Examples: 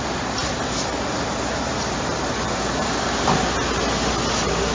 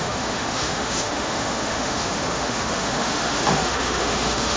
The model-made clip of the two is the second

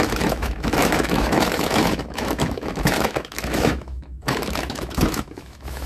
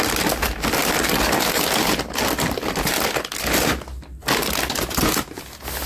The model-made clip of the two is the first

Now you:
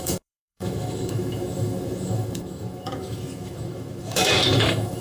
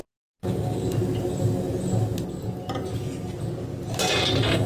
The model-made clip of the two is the first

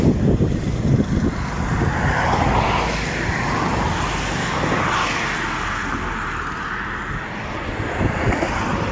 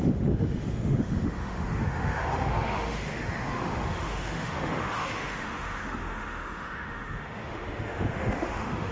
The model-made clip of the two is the second